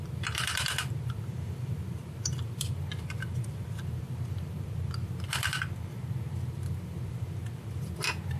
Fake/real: fake